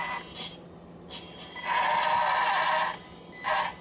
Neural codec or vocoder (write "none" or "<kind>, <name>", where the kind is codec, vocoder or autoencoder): none